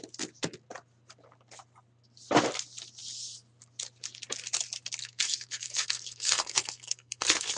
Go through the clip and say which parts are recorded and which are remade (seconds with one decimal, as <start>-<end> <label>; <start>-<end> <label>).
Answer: 0.0-5.0 recorded; 5.0-7.6 remade